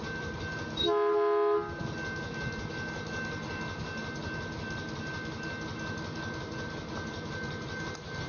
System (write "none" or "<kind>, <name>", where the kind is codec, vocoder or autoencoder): none